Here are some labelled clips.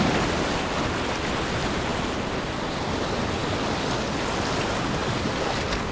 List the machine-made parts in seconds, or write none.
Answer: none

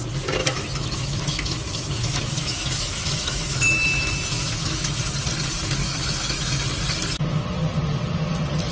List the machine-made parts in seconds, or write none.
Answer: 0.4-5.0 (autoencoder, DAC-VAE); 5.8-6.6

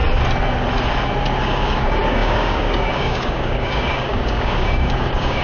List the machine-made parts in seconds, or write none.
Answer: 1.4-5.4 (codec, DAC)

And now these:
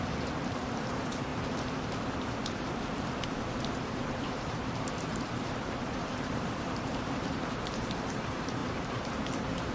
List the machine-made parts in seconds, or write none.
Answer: 0.0-9.7 (vocoder, BigVGAN v2)

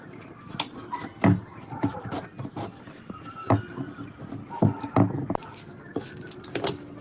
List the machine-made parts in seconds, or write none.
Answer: none

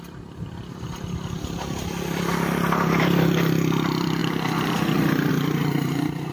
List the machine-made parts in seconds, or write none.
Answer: 0.0-4.2 (vocoder, BigVGAN v2); 5.3-6.3

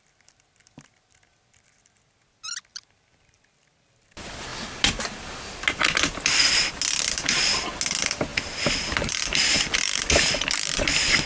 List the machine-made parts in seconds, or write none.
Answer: 8.3-10.2 (vocoder, BigVGAN v2)

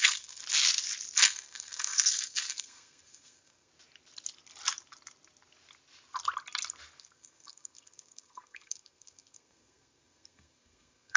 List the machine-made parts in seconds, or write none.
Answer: 0.0-0.4 (codec, SNAC); 1.2-3.7; 7.0-11.2